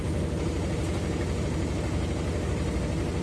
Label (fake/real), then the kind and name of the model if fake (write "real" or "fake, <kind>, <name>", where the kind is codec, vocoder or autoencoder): real